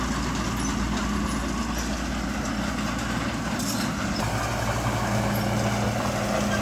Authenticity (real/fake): real